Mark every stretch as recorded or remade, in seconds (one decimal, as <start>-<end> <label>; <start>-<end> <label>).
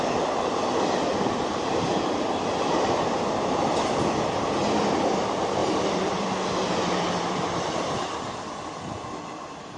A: 0.0-9.8 remade